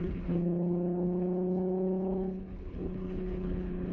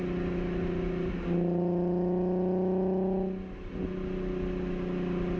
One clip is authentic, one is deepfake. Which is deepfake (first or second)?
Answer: first